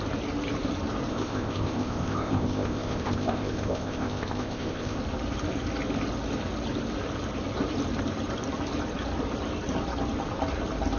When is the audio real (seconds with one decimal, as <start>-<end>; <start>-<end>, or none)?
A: 0.0-1.1; 5.0-11.0